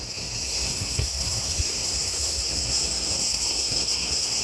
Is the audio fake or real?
fake